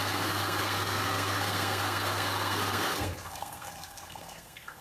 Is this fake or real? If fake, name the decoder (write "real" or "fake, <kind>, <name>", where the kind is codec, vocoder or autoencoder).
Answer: fake, codec, SNAC